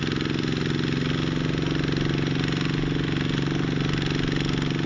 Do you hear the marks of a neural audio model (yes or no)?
no